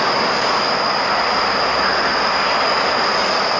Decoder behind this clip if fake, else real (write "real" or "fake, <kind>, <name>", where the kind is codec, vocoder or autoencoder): real